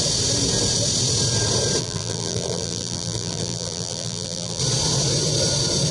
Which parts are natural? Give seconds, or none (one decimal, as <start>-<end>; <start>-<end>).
0.0-1.8; 4.6-5.9